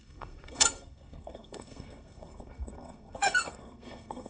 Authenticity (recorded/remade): remade